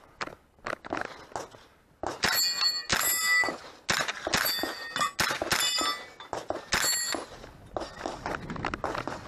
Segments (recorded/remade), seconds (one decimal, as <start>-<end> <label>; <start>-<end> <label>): 0.0-9.3 recorded